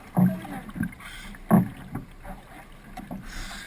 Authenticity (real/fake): real